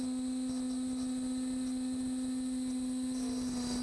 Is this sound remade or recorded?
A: recorded